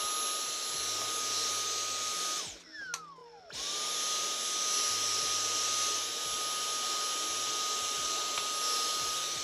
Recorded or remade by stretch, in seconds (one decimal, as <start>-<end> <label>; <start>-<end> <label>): 0.0-9.4 recorded